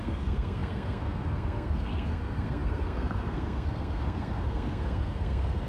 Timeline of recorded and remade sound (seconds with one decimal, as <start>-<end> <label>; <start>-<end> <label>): 0.0-5.7 remade